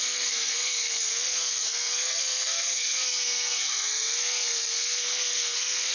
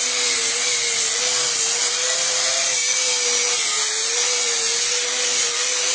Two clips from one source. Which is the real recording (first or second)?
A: second